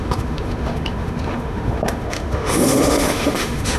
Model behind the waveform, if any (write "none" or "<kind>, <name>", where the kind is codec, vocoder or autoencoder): autoencoder, DAC-VAE